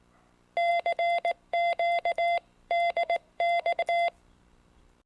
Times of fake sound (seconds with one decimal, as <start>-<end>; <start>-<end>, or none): 0.7-3.8